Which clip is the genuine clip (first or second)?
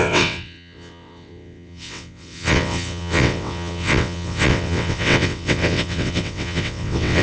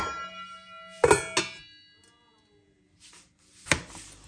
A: second